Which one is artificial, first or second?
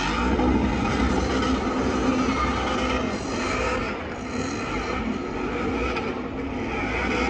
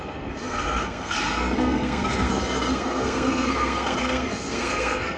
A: second